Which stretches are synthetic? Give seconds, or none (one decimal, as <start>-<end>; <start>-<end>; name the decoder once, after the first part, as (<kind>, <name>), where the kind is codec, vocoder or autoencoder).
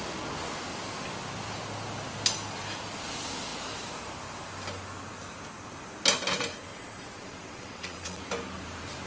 6.7-8.2 (vocoder, WaveNeXt)